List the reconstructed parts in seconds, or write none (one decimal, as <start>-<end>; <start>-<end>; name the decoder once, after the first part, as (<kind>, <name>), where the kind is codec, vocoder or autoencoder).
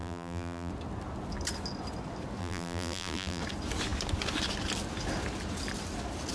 0.0-0.7 (vocoder, BigVGAN v2); 2.4-3.4